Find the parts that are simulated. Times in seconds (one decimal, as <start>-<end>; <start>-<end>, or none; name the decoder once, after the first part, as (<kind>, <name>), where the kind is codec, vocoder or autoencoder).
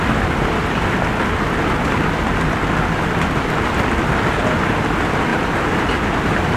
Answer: 5.3-6.6 (vocoder, BigVGAN v2)